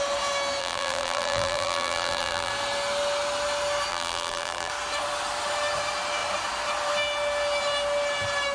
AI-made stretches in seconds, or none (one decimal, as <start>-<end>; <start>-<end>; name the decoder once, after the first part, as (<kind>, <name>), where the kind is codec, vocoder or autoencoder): 0.6-2.5 (vocoder, BigVGAN v2); 3.9-4.7